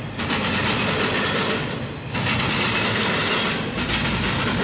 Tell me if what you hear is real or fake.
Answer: real